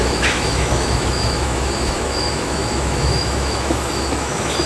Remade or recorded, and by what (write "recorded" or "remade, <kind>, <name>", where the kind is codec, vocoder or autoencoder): remade, autoencoder, DAC-VAE